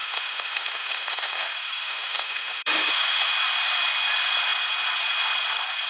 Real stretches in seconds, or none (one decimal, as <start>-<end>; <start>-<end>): 3.3-5.9